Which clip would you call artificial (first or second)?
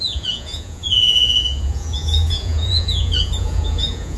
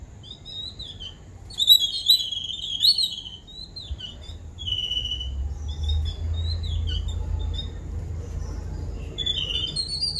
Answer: first